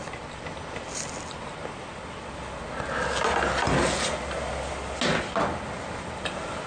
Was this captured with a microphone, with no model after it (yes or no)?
yes